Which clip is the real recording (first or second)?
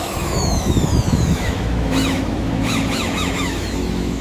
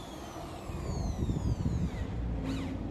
second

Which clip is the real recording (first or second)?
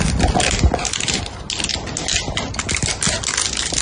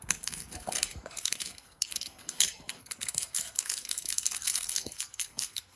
first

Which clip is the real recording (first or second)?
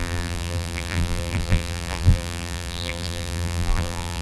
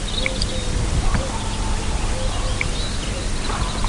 second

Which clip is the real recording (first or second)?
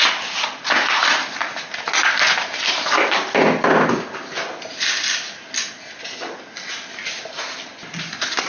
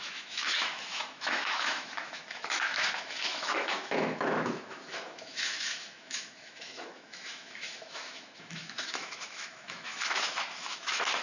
first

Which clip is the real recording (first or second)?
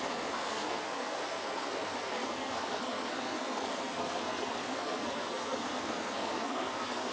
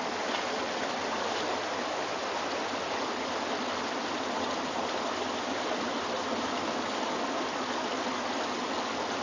second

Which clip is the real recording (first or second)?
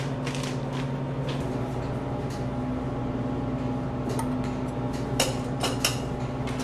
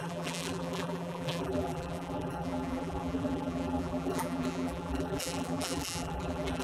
first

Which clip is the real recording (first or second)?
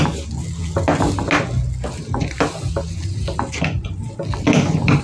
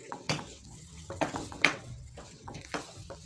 first